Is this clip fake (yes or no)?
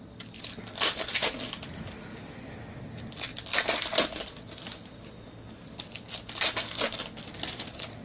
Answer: no